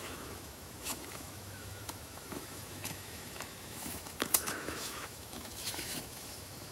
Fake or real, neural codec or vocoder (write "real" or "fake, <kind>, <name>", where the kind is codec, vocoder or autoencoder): fake, autoencoder, DAC-VAE